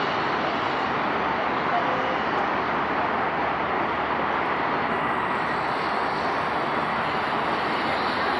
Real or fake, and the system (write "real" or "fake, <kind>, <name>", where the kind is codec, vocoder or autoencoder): real